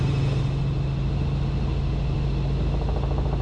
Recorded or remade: recorded